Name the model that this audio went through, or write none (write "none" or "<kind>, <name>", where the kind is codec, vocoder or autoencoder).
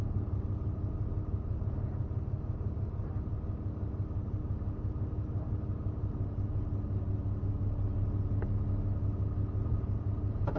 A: none